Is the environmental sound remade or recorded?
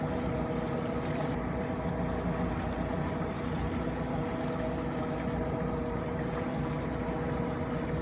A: recorded